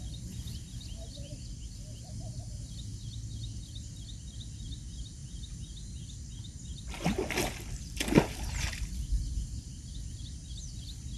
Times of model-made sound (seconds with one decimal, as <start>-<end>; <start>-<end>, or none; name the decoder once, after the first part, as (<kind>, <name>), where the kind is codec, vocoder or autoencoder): none